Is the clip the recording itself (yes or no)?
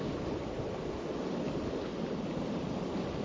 yes